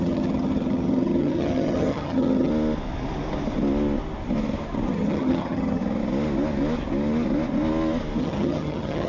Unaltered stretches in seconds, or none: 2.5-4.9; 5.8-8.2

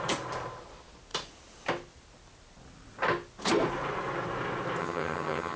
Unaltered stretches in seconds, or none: 0.0-4.8

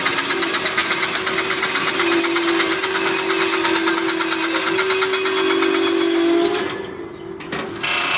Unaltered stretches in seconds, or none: 0.0-8.2

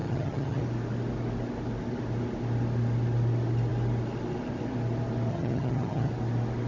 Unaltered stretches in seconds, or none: 0.6-5.3; 6.1-6.7

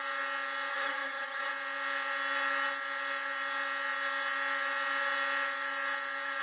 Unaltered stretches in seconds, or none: 0.0-0.7; 1.5-6.4

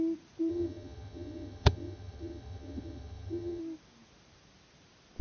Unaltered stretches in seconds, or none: 0.0-0.5; 3.6-5.2